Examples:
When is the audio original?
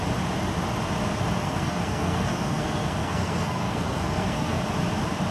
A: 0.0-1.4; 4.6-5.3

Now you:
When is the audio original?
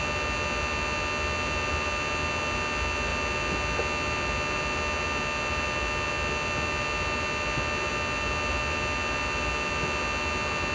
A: 0.0-10.7